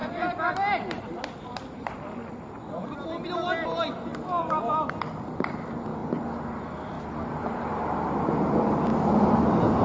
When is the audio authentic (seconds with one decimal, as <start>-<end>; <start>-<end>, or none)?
0.5-4.1; 4.9-6.0; 8.8-9.8